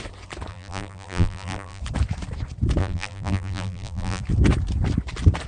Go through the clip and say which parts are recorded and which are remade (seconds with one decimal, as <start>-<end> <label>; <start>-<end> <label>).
0.0-0.5 recorded; 0.5-1.8 remade; 1.8-2.8 recorded; 2.8-4.2 remade; 4.2-5.5 recorded